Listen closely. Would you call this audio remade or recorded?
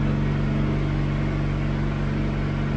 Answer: recorded